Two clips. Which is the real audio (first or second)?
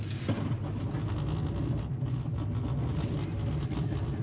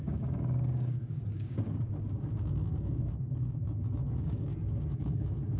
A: first